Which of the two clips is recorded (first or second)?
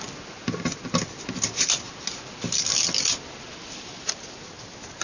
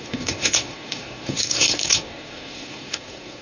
first